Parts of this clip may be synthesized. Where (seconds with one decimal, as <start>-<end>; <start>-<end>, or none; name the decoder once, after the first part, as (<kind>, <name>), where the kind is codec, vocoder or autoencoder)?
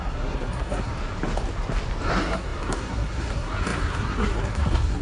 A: 0.0-0.9 (codec, SNAC); 2.1-5.0